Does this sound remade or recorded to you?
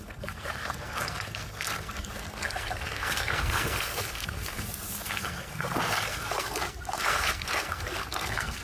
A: remade